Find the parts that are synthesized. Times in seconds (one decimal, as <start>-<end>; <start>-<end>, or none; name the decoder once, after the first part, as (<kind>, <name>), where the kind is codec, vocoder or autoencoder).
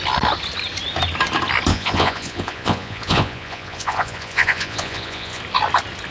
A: 1.7-5.4 (vocoder, Vocos)